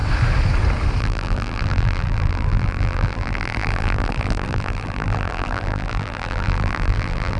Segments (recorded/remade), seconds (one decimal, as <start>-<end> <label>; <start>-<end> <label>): 0.0-1.0 recorded; 1.0-7.4 remade